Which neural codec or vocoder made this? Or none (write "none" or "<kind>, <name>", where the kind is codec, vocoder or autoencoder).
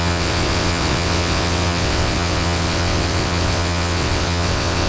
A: vocoder, WaveNeXt